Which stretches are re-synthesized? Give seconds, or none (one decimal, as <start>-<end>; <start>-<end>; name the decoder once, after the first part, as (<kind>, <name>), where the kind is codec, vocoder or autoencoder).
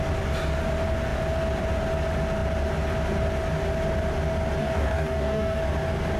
4.6-5.6 (codec, DAC)